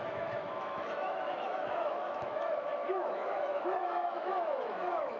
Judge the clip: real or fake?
fake